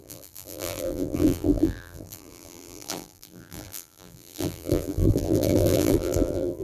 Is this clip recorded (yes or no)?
no